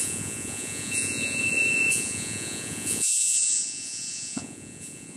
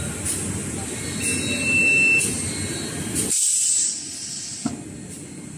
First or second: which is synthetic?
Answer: first